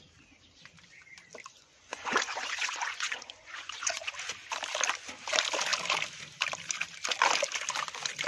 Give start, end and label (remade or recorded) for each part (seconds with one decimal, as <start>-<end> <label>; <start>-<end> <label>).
0.0-1.5 recorded; 1.5-4.1 remade; 4.1-8.3 recorded